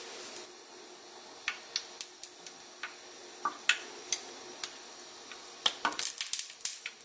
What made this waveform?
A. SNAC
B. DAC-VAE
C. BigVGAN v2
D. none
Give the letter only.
D